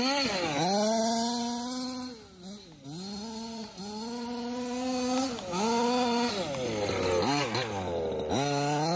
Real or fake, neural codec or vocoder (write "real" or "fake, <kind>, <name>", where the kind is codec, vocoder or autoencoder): real